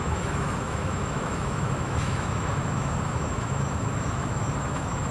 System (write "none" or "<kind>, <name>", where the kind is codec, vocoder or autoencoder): autoencoder, DAC-VAE